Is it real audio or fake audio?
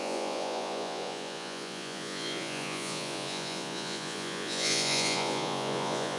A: fake